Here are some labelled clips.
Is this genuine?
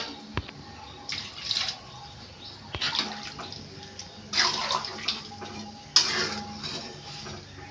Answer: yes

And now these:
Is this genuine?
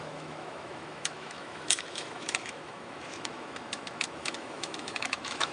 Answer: no